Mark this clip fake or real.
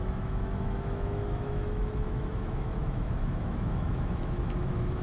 fake